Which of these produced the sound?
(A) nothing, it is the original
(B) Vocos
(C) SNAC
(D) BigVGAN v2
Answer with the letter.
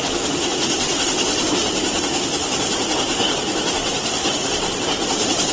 A